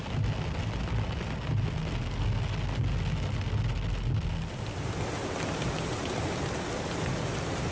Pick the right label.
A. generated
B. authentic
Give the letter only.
B